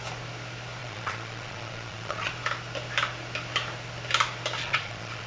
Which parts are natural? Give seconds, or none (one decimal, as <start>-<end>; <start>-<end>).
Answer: 0.0-0.8; 2.3-4.6